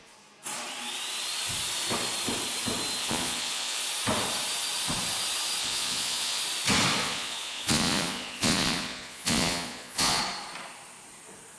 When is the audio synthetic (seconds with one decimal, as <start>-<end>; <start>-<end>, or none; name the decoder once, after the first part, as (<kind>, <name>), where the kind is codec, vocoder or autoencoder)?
3.0-3.8 (vocoder, Vocos); 5.6-6.4; 7.0-10.2